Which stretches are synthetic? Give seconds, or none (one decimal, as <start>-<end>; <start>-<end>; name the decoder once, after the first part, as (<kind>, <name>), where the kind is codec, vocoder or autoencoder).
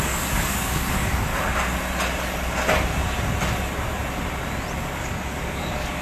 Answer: 0.0-1.3 (codec, DAC); 4.8-6.0